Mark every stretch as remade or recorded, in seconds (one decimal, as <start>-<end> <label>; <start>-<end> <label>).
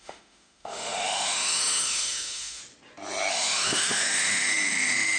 0.0-2.6 remade; 2.6-3.3 recorded; 3.3-5.2 remade